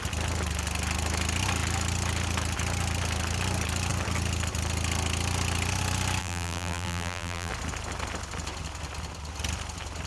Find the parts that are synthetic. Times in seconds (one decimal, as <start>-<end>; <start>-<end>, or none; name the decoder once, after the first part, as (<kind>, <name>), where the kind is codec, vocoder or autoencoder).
6.2-7.5 (vocoder, BigVGAN v2)